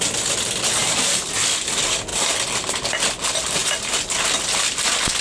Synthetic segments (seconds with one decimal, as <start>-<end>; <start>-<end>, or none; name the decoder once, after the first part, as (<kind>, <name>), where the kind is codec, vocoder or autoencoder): 0.8-1.4 (vocoder, BigVGAN v2)